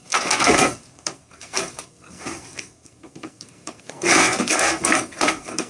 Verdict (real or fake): fake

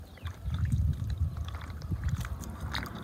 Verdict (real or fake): fake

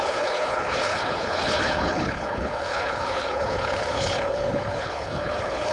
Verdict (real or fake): fake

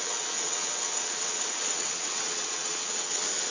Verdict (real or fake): fake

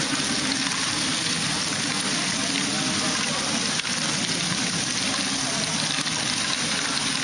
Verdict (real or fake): real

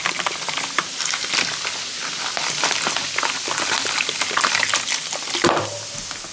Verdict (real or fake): real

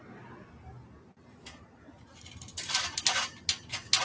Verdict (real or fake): real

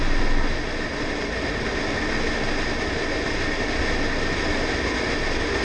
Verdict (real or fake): real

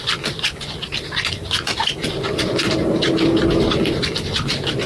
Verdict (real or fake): real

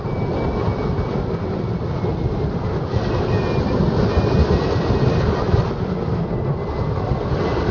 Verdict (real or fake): real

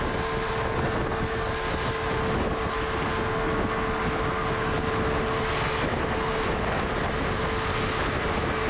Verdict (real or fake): real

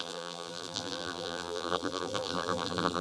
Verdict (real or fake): fake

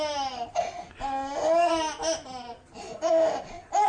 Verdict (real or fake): real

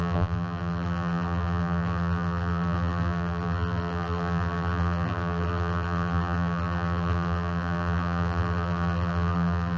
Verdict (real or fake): fake